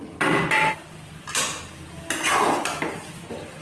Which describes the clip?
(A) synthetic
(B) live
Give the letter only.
B